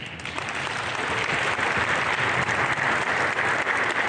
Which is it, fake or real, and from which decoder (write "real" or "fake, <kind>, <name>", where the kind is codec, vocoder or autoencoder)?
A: real